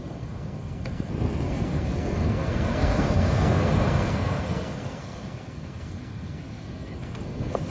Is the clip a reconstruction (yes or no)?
yes